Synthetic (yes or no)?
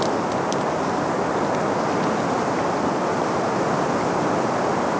no